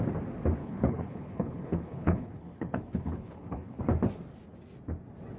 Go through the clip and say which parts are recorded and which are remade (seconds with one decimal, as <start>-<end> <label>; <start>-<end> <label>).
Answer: 0.0-0.6 recorded; 0.6-3.8 remade; 3.8-5.4 recorded